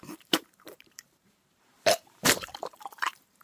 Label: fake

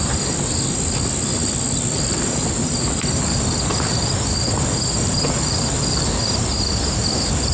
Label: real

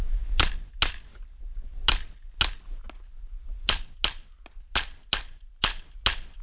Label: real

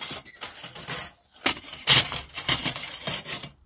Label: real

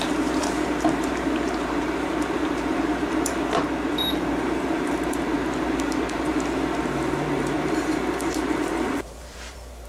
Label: fake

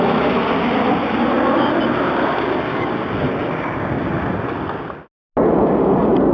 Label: real